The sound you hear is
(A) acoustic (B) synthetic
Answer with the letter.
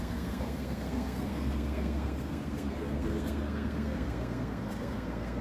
B